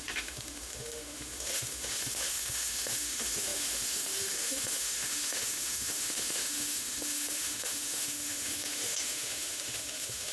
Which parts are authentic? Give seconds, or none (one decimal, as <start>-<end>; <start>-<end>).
none